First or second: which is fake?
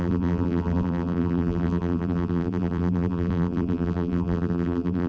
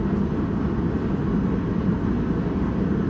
first